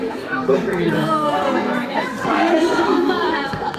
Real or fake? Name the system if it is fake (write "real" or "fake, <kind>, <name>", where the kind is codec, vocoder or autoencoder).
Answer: fake, codec, SNAC